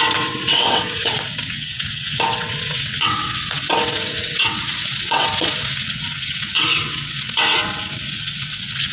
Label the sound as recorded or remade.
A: remade